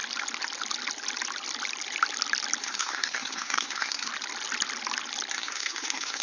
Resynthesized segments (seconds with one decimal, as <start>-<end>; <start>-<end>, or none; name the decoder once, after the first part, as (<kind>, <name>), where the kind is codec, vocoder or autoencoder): 2.6-4.1 (codec, SNAC); 5.3-6.2

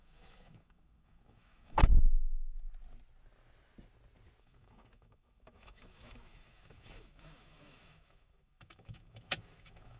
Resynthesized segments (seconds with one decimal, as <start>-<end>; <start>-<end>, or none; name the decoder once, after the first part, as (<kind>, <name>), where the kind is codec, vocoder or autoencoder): 0.0-1.9 (autoencoder, DAC-VAE); 4.4-10.0

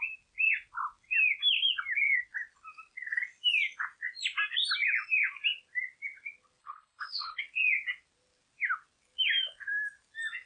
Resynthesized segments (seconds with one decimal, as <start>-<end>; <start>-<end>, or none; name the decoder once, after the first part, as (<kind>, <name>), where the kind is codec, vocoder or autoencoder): 6.6-7.4 (codec, HILCodec)

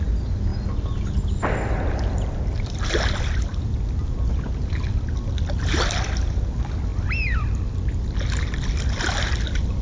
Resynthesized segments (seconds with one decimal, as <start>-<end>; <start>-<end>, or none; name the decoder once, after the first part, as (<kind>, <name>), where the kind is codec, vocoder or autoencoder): none

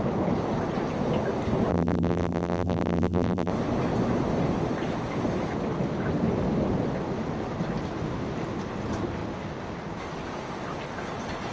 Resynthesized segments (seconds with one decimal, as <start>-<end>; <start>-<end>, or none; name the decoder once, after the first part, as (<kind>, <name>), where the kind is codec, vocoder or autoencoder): 1.7-3.5 (vocoder, BigVGAN v2)